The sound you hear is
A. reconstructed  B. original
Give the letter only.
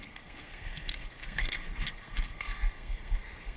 A